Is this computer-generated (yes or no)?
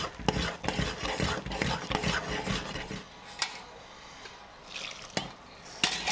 no